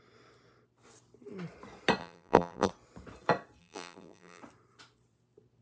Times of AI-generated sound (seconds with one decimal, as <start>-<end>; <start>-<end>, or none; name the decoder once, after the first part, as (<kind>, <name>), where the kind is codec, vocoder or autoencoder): 2.0-2.7 (vocoder, BigVGAN v2); 3.6-4.4